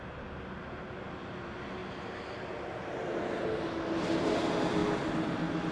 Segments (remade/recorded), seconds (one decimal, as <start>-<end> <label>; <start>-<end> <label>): 0.0-5.7 recorded